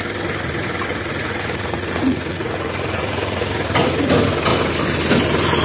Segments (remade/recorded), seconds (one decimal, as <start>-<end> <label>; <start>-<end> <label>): 0.0-0.9 recorded; 0.9-3.5 remade; 3.5-5.6 recorded